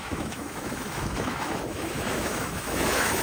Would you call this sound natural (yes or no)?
no